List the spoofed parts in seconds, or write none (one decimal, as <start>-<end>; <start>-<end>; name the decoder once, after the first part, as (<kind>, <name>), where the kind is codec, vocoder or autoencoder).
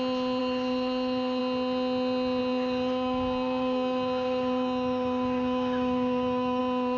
0.4-1.4 (codec, DAC); 2.4-6.6